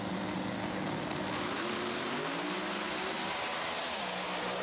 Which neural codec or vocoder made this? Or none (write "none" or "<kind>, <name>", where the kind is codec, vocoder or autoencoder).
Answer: none